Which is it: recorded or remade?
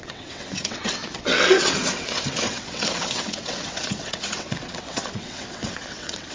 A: remade